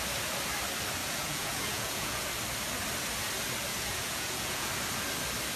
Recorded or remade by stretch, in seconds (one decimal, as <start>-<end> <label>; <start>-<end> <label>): 0.0-1.0 recorded; 1.0-2.3 remade; 2.3-3.7 recorded; 3.7-4.7 remade; 4.7-5.6 recorded